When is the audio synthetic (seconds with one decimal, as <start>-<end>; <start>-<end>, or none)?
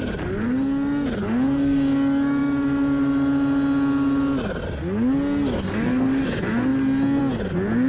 none